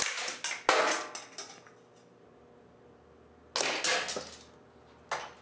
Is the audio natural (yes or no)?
yes